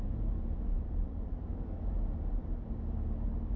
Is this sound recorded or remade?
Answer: recorded